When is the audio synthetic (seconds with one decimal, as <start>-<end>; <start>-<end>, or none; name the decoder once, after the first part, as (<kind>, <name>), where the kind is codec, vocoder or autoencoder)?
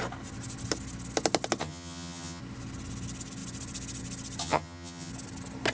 1.6-2.4 (vocoder, HiFi-GAN); 4.4-5.1